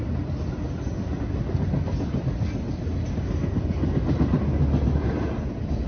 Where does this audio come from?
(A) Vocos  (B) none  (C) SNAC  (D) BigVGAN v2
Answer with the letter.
B